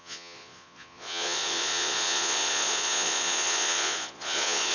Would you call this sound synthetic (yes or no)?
yes